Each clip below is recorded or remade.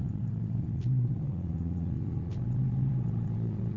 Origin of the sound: remade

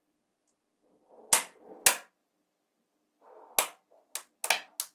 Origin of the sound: recorded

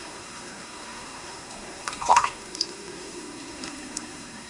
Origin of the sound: remade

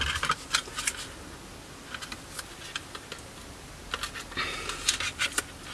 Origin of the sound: recorded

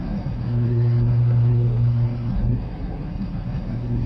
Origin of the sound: remade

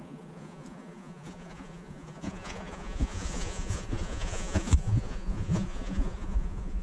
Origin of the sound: remade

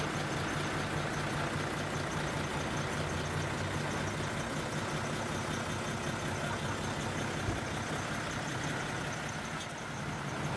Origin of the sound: recorded